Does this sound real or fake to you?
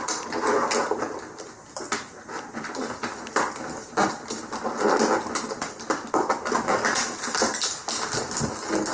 real